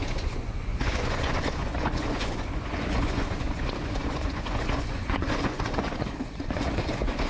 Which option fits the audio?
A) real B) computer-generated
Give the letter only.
B